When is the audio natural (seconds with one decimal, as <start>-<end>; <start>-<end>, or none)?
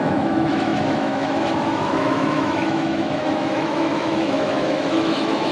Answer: none